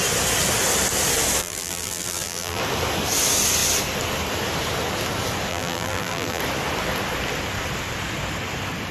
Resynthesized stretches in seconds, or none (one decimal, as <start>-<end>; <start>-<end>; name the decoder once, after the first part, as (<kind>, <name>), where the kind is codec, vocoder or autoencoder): 1.4-2.6 (vocoder, BigVGAN v2); 5.5-6.4